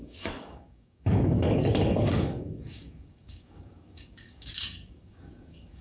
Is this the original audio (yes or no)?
no